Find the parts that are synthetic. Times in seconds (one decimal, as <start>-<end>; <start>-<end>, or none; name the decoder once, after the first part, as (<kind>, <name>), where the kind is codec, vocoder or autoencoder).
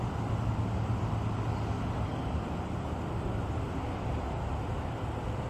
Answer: none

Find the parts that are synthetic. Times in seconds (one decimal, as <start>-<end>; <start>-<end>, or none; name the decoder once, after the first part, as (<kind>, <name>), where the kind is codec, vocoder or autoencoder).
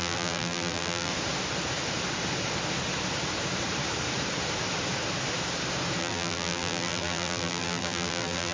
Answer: 0.0-1.1 (vocoder, BigVGAN v2); 6.0-8.5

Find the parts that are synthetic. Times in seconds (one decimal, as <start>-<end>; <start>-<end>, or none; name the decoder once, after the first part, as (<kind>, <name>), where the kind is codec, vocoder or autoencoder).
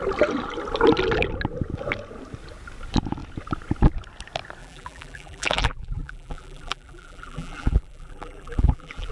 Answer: 4.6-9.1 (vocoder, BigVGAN v2)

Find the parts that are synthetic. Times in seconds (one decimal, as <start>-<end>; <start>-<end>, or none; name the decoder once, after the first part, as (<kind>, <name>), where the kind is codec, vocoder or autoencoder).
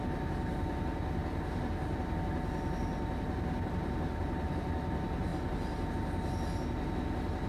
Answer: none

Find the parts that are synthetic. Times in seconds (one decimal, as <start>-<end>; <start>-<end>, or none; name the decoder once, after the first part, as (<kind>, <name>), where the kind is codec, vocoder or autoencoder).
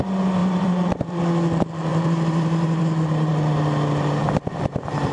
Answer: 0.4-1.2 (vocoder, BigVGAN v2); 1.9-2.8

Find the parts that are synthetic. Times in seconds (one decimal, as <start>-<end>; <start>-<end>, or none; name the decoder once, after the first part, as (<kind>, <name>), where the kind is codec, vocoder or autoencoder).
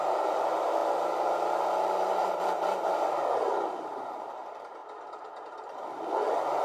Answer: 0.0-4.8 (vocoder, BigVGAN v2); 5.4-6.6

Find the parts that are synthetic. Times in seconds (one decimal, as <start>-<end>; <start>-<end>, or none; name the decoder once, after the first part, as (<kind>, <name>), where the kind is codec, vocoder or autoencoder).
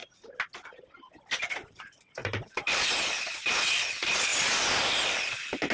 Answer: 2.2-2.9 (vocoder, BigVGAN v2)